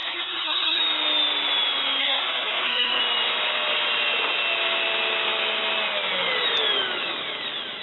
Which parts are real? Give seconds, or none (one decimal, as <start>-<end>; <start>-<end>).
0.8-2.0; 3.0-7.8